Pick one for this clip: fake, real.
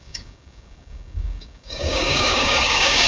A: fake